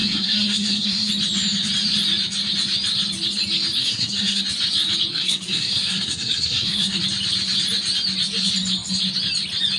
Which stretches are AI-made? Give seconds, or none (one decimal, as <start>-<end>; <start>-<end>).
0.0-1.1; 3.8-4.4; 5.1-7.0

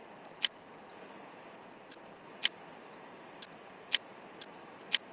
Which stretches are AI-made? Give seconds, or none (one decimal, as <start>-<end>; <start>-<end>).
none

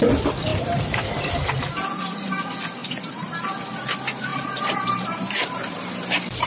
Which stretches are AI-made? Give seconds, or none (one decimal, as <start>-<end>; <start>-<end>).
0.5-1.4; 2.8-3.3; 4.3-5.7

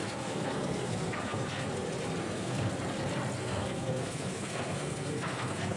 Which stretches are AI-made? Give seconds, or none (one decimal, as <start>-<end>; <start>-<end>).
0.0-1.7; 2.2-2.7; 3.4-5.8

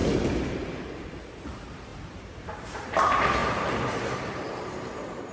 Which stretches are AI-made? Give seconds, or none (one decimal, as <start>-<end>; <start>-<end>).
0.5-3.4; 4.2-5.3

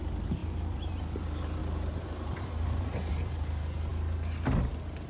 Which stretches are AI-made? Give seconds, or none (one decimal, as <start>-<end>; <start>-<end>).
0.4-0.9; 1.6-3.1

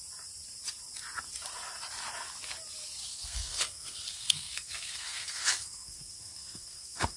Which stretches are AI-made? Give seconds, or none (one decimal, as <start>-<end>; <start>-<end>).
3.1-7.2